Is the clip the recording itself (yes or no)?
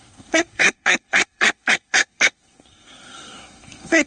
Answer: no